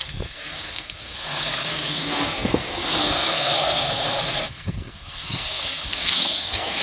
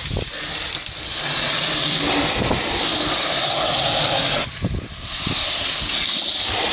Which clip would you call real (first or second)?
second